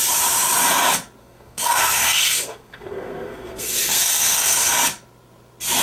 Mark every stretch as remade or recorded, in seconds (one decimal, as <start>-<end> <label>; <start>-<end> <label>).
0.0-1.2 recorded; 1.2-4.7 remade; 4.7-5.8 recorded